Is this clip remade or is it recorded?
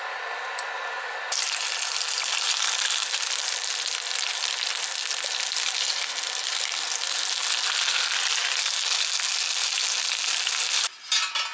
recorded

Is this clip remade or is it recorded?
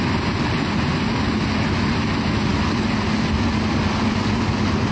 recorded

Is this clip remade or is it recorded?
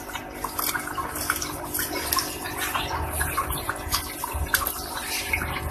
recorded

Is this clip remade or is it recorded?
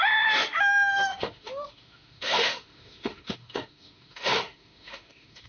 remade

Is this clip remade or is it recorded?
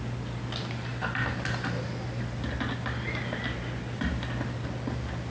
recorded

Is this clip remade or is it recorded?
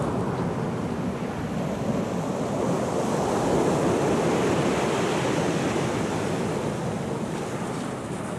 recorded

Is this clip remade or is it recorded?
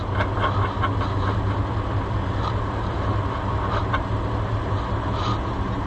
recorded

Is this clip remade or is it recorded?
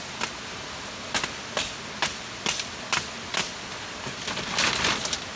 recorded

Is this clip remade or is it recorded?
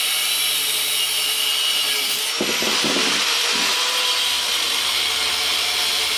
recorded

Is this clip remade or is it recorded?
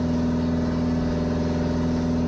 recorded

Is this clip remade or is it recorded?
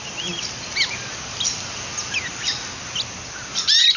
recorded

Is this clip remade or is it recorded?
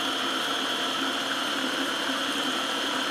recorded